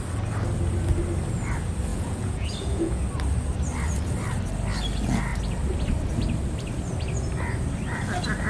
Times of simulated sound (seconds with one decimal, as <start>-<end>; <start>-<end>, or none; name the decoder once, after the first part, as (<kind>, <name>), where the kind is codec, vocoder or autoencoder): 1.9-3.0 (vocoder, Vocos)